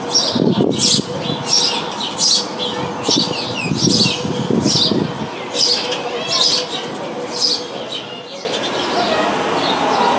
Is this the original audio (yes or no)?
yes